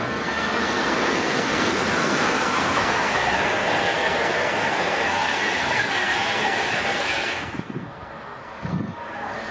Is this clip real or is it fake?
fake